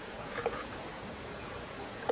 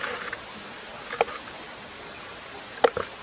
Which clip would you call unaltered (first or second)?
second